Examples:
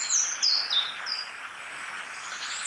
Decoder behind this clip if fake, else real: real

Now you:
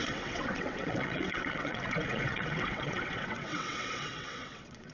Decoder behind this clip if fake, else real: fake, vocoder, WaveNeXt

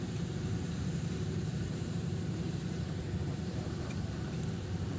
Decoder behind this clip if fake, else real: fake, vocoder, BigVGAN v2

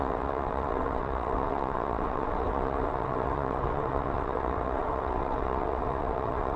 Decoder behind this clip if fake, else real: fake, vocoder, WaveNeXt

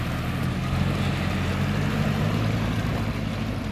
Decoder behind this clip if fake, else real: real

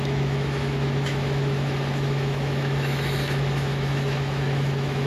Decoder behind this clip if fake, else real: fake, autoencoder, DAC-VAE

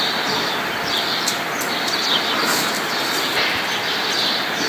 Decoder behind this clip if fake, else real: real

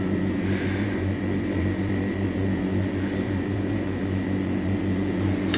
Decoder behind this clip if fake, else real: fake, vocoder, Vocos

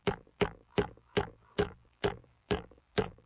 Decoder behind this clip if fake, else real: fake, vocoder, BigVGAN v2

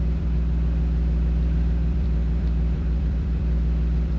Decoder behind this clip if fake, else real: fake, vocoder, BigVGAN v2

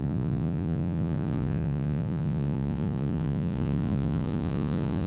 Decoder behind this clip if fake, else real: fake, vocoder, Vocos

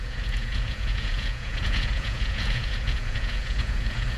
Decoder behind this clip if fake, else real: fake, vocoder, Vocos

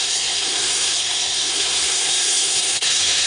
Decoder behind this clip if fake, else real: fake, codec, SNAC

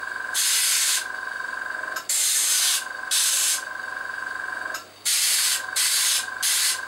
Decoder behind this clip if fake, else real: real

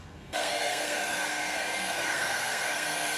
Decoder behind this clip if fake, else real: fake, codec, SNAC